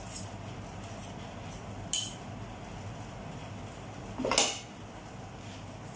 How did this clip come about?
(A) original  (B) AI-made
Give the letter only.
A